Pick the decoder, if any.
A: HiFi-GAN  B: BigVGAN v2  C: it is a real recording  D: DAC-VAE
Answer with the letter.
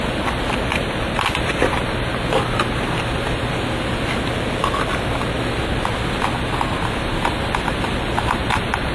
C